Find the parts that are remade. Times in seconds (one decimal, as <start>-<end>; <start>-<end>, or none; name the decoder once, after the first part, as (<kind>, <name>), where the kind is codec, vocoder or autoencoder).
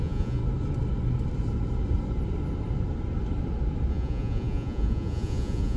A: 0.0-0.4 (vocoder, Vocos); 3.9-5.8